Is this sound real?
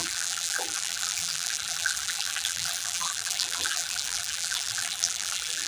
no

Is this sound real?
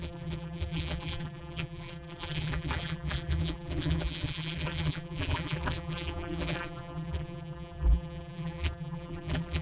no